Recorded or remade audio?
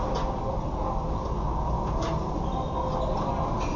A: recorded